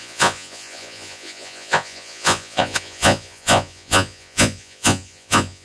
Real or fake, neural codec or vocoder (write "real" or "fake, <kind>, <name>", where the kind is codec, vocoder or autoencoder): fake, vocoder, Vocos